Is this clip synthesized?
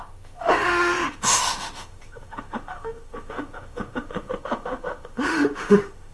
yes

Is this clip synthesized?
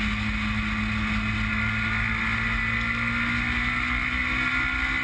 no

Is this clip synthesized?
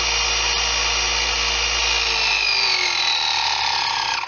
no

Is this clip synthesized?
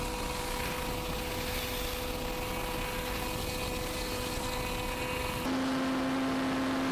no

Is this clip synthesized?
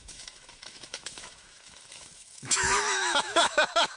yes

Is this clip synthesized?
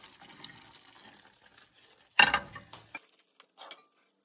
no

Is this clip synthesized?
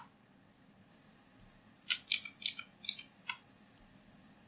no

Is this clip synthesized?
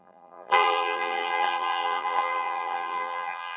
yes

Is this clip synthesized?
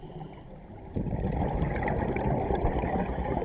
no